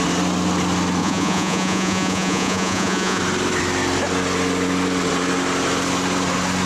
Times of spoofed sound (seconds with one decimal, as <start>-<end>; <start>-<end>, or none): 1.0-3.2